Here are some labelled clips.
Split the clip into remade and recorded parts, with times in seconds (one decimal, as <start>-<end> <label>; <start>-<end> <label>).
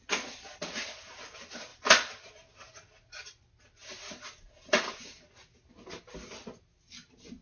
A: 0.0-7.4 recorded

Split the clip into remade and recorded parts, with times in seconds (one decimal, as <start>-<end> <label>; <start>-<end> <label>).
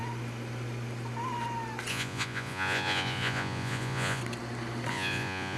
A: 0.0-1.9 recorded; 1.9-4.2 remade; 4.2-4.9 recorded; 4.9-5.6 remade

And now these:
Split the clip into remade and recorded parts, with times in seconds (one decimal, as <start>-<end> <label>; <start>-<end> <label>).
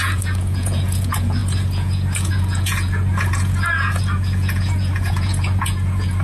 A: 0.0-6.2 remade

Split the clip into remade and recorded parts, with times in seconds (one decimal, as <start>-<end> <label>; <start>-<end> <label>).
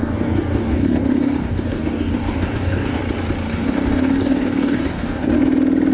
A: 0.0-3.0 remade; 3.0-3.5 recorded; 3.5-5.3 remade; 5.3-5.9 recorded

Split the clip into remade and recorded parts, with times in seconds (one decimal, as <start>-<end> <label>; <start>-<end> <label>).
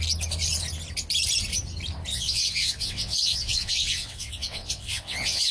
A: 0.0-2.1 recorded; 2.1-5.5 remade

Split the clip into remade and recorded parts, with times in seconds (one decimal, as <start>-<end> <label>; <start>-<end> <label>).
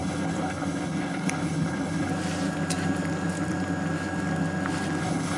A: 0.0-2.1 remade; 2.1-5.0 recorded; 5.0-5.4 remade